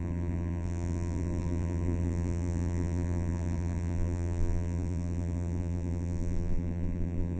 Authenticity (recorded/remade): remade